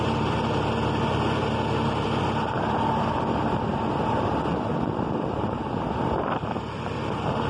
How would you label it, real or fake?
fake